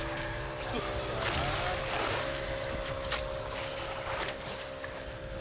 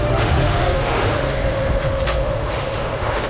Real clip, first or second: first